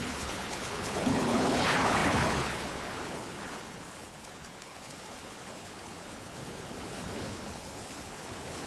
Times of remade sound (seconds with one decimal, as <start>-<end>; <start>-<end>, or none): 0.0-8.7